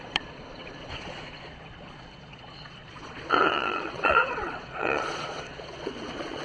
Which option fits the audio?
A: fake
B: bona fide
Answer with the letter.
A